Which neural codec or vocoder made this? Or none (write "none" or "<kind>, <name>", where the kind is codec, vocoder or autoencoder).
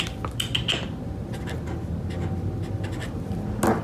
none